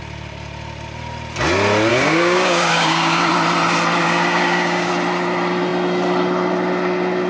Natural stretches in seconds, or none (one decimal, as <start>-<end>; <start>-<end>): 0.0-1.9; 3.3-4.0; 4.9-7.3